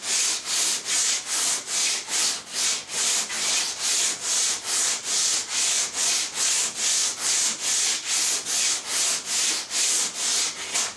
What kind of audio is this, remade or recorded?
recorded